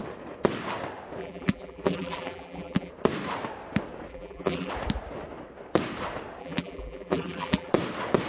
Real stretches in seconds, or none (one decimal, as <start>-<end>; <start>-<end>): 0.0-1.2; 2.9-4.1; 4.7-6.4; 7.7-8.3

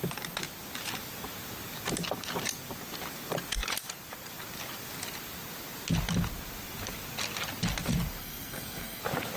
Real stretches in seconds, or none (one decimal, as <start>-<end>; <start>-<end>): 0.0-8.2; 9.0-9.4

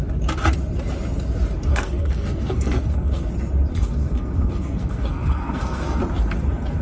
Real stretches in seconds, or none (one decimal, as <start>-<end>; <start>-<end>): 0.0-1.7; 3.3-3.7; 6.0-6.8

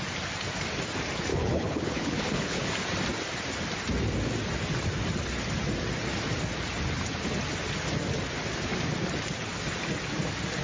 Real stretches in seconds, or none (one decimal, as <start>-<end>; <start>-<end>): 0.0-1.3; 2.7-10.6